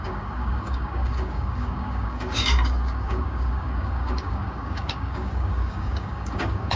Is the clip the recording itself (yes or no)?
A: no